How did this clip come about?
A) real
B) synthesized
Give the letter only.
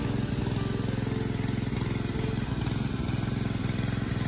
A